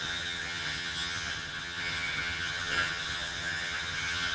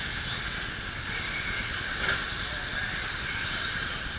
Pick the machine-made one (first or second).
first